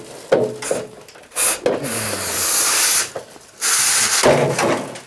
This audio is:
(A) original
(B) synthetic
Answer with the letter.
A